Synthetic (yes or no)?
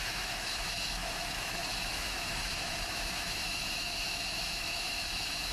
yes